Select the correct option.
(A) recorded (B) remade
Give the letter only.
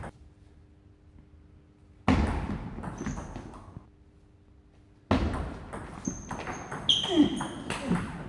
A